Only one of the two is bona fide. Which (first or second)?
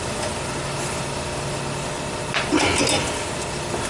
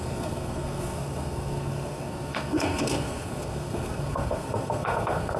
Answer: first